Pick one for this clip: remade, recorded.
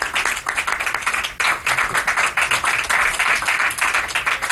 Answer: recorded